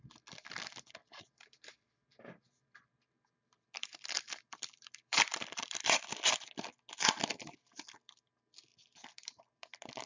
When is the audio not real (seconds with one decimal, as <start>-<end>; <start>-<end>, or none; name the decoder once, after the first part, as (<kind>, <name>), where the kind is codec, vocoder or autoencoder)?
1.0-6.0 (vocoder, BigVGAN v2)